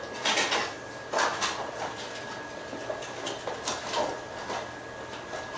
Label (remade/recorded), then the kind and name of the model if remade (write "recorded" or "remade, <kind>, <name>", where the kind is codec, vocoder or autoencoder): recorded